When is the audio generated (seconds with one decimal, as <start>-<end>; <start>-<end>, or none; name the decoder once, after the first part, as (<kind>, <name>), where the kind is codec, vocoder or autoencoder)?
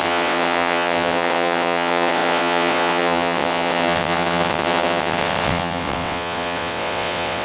0.0-7.4 (vocoder, WaveNeXt)